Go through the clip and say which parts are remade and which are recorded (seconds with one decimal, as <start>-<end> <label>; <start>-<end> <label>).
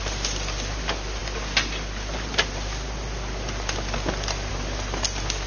0.0-5.5 recorded